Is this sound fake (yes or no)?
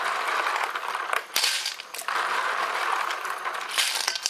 no